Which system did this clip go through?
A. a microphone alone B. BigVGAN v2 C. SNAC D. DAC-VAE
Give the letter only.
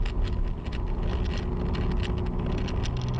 A